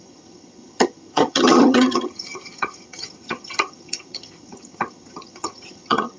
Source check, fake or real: fake